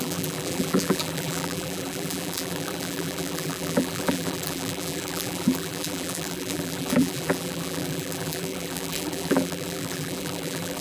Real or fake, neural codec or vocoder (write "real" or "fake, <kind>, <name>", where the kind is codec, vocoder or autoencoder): fake, vocoder, BigVGAN v2